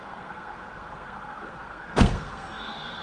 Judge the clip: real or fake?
fake